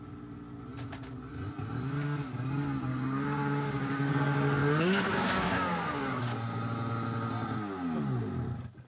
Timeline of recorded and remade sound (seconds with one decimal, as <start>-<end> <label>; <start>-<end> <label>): 0.0-2.9 recorded; 2.9-4.1 remade; 4.1-4.6 recorded; 4.6-6.2 remade; 6.2-8.9 recorded